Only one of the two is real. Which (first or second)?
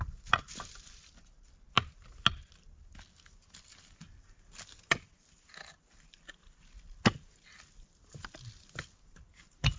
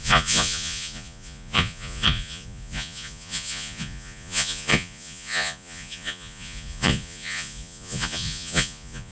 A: first